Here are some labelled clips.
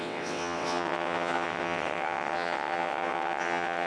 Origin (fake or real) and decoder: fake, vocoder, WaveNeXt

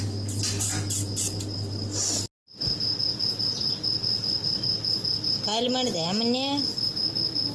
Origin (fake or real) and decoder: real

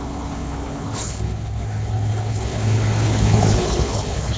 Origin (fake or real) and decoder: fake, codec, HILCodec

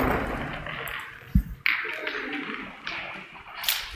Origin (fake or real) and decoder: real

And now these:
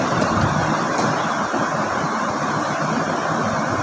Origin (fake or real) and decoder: fake, vocoder, BigVGAN v2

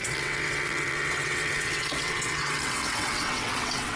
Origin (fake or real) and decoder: fake, vocoder, WaveNeXt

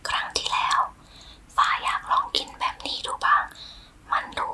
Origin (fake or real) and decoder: fake, vocoder, BigVGAN v2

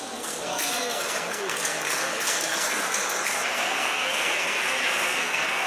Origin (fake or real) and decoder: fake, codec, SNAC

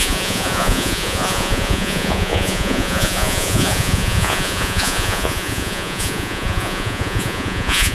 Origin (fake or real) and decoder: fake, vocoder, Vocos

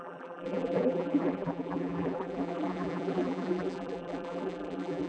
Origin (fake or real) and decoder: fake, vocoder, BigVGAN v2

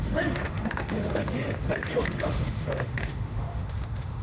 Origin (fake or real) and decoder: fake, autoencoder, DAC-VAE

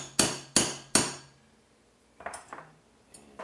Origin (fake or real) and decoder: real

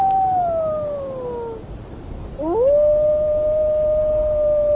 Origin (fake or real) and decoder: real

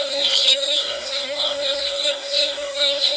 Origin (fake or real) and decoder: fake, codec, SNAC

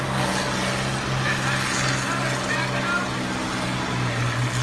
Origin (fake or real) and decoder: real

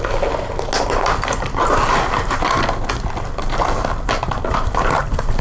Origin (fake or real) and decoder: real